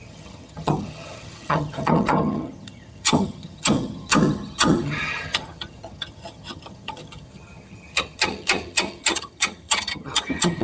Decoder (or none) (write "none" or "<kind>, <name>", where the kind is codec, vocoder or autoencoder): vocoder, HiFi-GAN